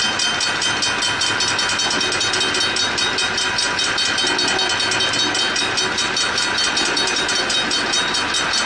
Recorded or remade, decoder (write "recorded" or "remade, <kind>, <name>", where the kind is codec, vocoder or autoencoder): recorded